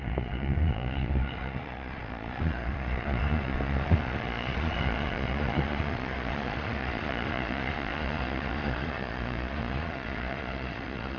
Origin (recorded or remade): remade